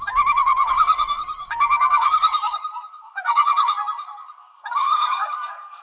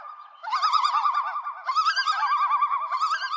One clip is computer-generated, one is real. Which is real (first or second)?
second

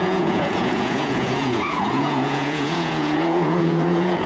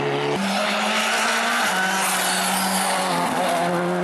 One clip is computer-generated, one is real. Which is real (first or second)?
second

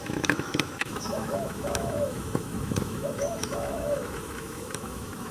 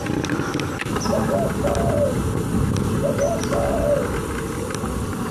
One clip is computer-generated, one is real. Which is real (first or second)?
second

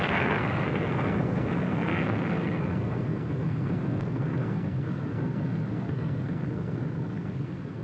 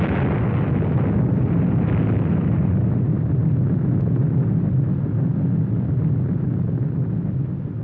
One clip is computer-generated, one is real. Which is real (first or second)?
second